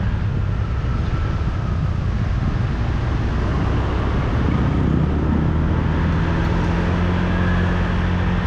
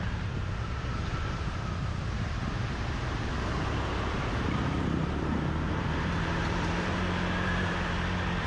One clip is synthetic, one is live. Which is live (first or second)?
first